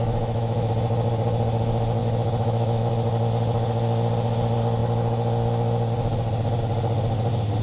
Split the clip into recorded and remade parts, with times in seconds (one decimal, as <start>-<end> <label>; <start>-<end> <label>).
0.0-0.7 remade; 0.7-2.0 recorded; 2.0-2.9 remade; 2.9-7.6 recorded